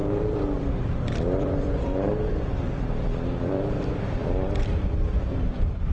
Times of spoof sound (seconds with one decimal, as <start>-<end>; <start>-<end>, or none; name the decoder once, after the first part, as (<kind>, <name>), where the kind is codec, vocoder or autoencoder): 0.0-5.9 (vocoder, BigVGAN v2)